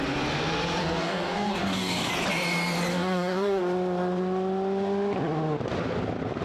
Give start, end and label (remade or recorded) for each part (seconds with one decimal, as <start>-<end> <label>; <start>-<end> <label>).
0.0-0.8 recorded; 0.8-2.1 remade; 2.1-2.9 recorded; 2.9-3.6 remade; 3.6-6.4 recorded

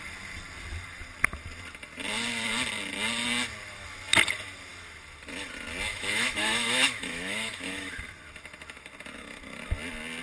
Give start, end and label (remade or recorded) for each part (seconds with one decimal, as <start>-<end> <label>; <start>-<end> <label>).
0.0-5.9 recorded; 5.9-8.0 remade; 8.0-10.2 recorded